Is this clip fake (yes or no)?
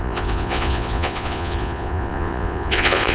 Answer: yes